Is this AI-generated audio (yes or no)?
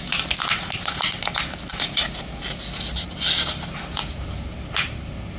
no